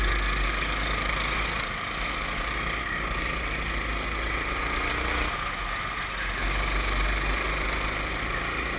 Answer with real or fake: real